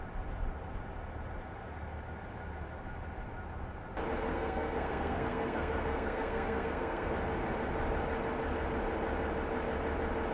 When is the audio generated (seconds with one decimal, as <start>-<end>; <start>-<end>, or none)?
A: 4.3-7.1